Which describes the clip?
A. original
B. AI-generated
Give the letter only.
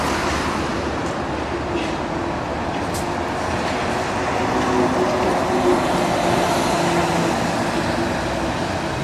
A